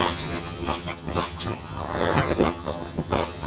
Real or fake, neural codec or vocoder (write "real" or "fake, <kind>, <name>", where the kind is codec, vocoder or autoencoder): fake, vocoder, HiFi-GAN